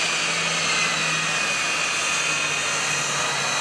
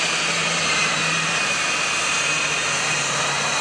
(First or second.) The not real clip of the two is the second